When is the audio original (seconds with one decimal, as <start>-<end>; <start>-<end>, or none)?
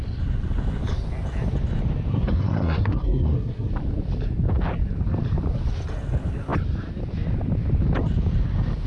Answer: 0.0-2.1; 3.7-8.9